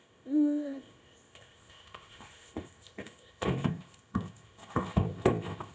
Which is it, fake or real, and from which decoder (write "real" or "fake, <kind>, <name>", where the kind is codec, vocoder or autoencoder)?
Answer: fake, codec, ZipCodec